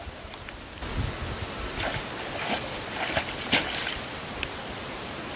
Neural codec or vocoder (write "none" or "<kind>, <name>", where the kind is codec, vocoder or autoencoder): none